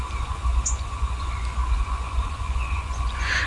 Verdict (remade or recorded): remade